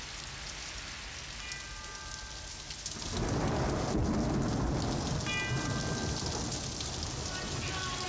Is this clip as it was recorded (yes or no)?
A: yes